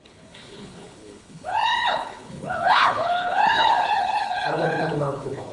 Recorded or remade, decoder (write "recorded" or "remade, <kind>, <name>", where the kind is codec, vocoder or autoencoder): remade, codec, HILCodec